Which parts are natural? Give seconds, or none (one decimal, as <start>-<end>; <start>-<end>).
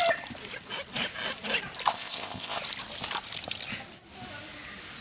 0.0-1.9; 2.6-5.0